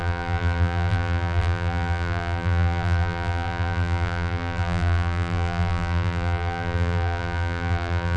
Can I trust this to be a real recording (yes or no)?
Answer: no